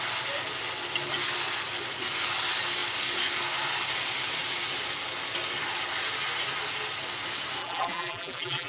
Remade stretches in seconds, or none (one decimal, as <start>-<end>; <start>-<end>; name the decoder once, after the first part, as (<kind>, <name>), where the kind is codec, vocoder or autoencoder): 7.6-8.7 (vocoder, BigVGAN v2)